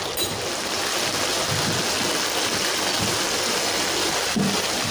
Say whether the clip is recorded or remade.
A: recorded